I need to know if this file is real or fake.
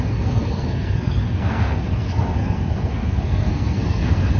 fake